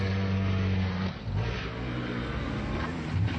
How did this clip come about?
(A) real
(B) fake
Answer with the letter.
A